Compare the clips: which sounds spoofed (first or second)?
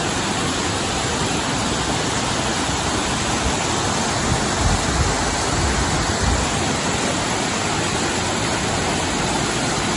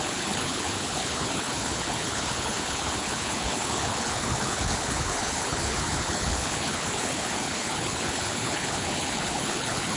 second